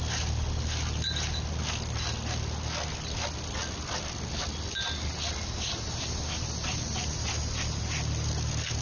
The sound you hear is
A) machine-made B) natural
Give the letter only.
B